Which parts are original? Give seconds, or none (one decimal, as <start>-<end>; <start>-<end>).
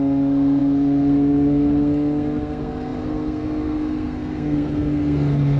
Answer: none